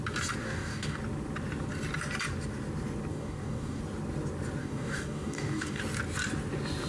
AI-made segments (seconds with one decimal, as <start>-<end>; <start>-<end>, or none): 0.4-1.0; 3.1-3.8; 4.6-5.8